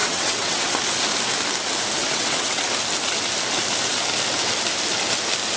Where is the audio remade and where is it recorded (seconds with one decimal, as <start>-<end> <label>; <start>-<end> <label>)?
0.0-0.7 remade; 0.7-2.0 recorded; 2.0-2.6 remade; 2.6-5.6 recorded